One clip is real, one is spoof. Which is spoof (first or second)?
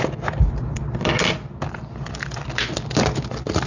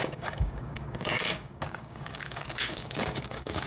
second